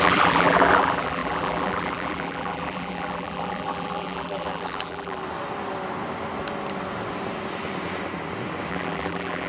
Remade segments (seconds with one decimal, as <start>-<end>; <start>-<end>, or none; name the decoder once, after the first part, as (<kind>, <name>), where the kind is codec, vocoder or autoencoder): 0.0-5.2 (vocoder, BigVGAN v2); 8.7-9.5